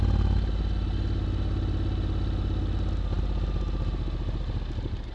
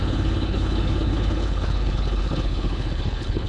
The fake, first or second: second